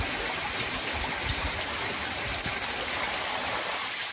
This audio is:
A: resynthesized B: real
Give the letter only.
B